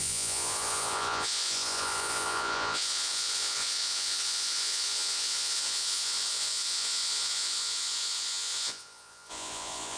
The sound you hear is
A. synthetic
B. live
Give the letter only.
A